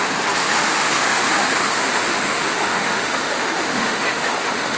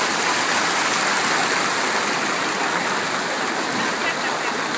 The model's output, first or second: first